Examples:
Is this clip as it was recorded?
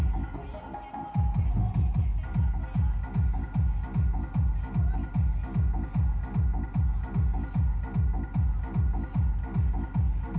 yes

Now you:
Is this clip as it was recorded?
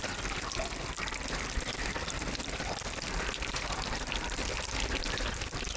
no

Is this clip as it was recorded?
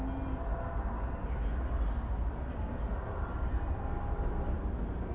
yes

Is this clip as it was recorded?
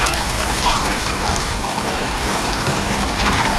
no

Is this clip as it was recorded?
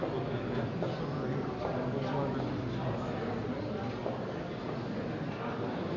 yes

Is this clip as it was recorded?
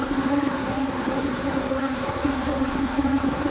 no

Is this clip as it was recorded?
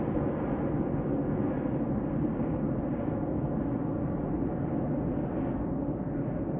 yes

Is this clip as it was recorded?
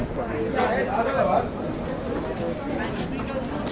yes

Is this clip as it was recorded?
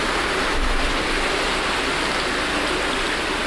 yes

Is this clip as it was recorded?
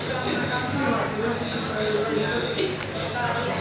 yes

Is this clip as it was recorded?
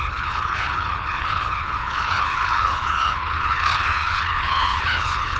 no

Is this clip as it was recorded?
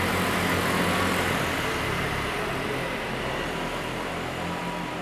yes